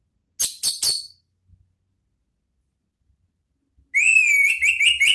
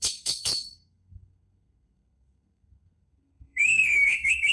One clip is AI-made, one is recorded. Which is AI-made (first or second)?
second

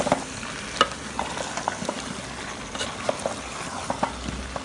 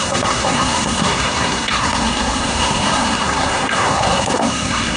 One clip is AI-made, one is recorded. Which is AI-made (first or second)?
second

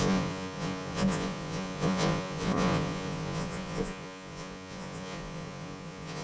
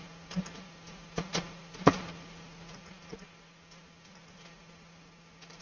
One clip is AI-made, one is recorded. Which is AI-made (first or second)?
first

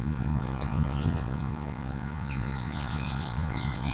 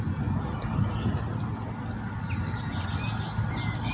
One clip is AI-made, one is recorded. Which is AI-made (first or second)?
first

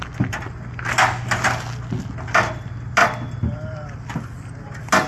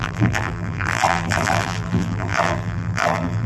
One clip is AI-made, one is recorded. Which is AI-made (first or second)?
second